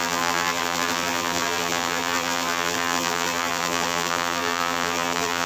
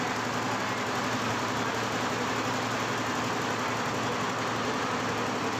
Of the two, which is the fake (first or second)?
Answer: first